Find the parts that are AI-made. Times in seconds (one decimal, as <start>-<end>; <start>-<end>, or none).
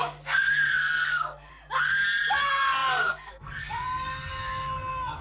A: 0.0-1.5; 2.4-5.2